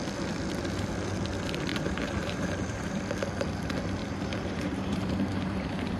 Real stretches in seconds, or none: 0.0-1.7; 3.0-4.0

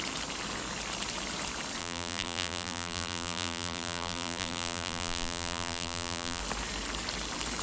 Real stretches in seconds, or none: 0.0-1.8; 6.4-7.6

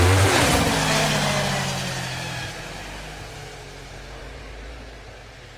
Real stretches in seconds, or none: 0.8-4.2

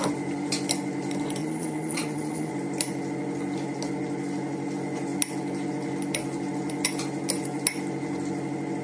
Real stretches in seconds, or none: 0.0-1.4; 2.5-8.8